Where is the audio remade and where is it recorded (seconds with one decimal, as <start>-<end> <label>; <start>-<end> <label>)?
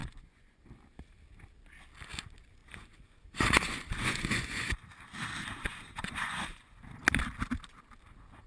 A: 0.0-0.6 remade; 0.6-2.6 recorded; 2.6-4.7 remade; 4.7-5.7 recorded; 5.7-6.8 remade; 6.8-8.5 recorded